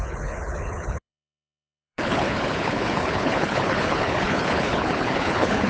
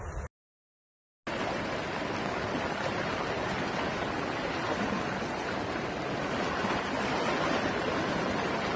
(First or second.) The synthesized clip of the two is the first